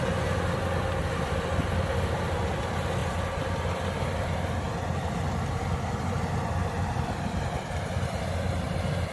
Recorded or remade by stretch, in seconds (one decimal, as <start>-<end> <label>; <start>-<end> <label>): 0.0-9.1 recorded